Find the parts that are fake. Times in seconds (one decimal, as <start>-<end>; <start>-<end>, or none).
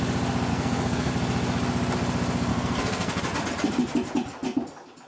0.5-1.1; 2.5-3.2